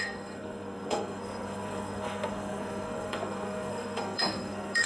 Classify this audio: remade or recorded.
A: remade